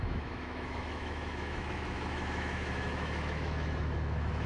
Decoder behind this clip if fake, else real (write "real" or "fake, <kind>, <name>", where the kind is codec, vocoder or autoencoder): fake, autoencoder, DAC-VAE